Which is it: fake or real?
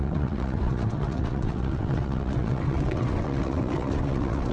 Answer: fake